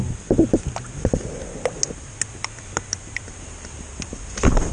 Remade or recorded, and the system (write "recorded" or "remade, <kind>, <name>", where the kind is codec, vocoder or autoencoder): recorded